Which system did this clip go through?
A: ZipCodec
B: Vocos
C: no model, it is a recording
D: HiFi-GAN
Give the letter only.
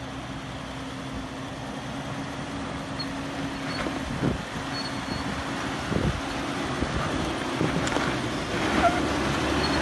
C